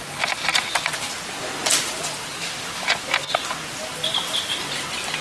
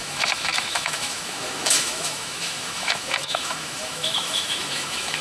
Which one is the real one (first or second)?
first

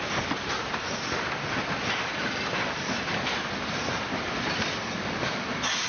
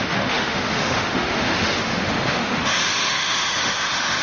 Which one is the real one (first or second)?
first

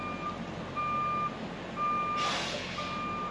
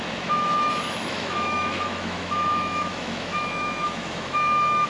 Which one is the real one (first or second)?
first